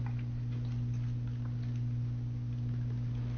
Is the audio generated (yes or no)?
no